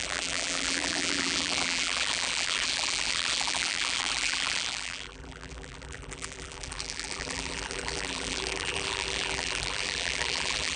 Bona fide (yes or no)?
no